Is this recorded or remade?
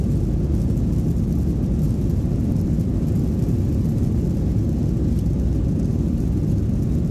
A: recorded